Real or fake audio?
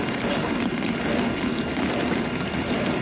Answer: real